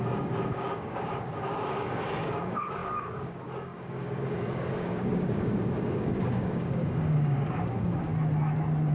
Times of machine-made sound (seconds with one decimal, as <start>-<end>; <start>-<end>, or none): 0.0-8.1